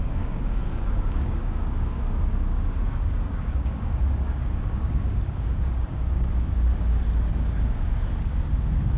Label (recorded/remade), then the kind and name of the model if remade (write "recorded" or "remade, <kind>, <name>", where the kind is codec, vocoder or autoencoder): remade, codec, DAC